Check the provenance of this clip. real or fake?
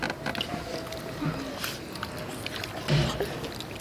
real